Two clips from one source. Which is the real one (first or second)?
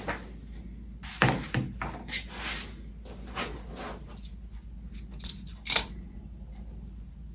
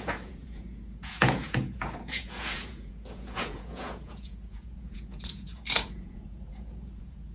first